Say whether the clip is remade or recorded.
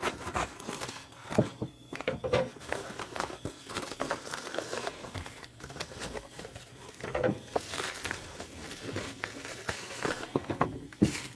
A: remade